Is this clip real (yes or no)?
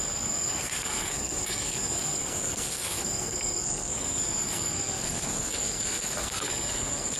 no